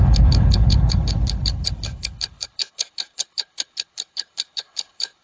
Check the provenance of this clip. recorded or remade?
remade